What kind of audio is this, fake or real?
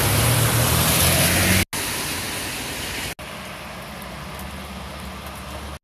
real